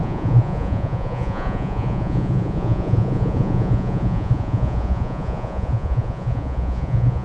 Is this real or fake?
fake